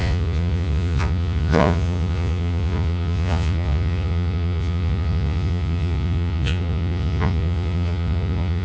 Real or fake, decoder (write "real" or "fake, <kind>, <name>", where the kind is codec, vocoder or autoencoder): fake, vocoder, Vocos